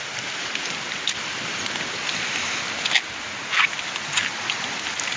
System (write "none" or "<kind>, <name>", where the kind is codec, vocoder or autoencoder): none